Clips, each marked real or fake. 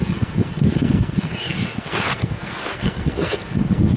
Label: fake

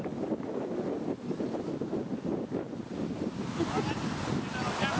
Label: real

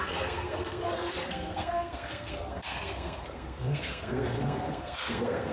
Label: fake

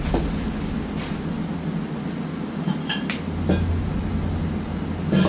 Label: real